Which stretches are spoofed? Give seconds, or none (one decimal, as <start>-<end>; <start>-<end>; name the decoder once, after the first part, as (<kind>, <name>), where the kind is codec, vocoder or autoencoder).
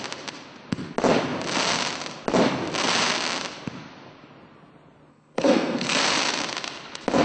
5.1-6.0 (codec, SNAC)